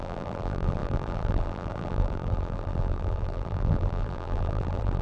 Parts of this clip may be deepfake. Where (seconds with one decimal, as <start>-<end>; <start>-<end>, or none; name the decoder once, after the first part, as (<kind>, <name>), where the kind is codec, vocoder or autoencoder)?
0.0-5.0 (vocoder, BigVGAN v2)